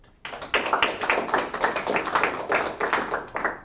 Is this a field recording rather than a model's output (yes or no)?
yes